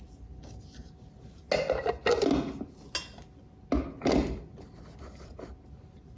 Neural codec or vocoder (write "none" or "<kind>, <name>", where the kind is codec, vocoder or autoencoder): none